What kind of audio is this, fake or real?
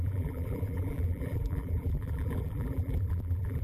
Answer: fake